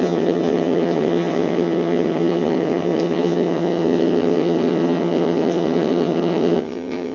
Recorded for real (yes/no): no